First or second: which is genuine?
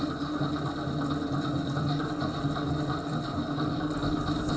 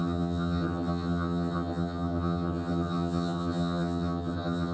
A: first